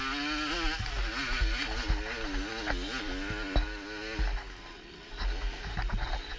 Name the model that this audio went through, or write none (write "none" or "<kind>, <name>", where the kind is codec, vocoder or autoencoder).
none